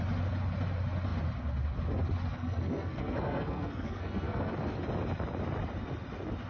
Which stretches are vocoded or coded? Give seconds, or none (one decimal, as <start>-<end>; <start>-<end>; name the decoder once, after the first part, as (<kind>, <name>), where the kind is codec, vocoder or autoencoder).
2.4-4.5 (codec, SNAC)